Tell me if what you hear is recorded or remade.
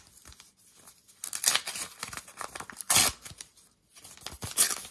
recorded